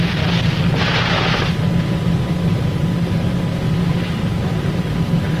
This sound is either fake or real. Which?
real